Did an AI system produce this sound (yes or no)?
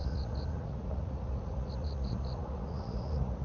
yes